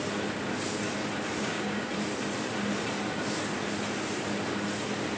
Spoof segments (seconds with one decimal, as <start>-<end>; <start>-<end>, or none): 1.4-1.9